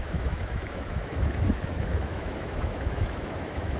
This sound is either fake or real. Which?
fake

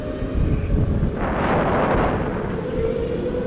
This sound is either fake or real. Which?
real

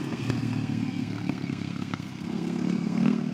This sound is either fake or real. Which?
fake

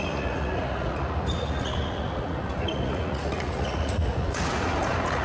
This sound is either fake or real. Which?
fake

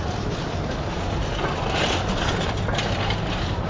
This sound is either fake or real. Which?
real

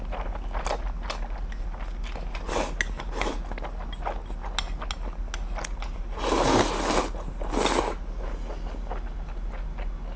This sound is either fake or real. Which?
real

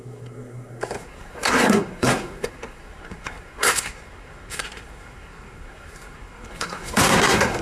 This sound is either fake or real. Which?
fake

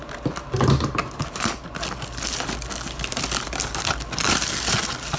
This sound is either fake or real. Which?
real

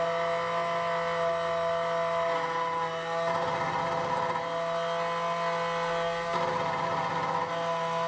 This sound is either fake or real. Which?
real